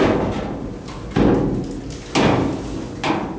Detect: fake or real real